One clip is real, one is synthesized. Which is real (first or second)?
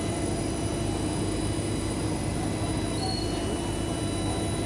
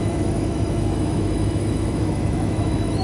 first